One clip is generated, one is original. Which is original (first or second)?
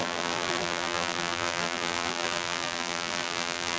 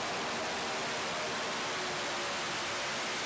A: second